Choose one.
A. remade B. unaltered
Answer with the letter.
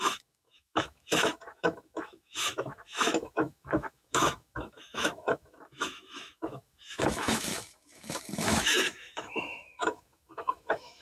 A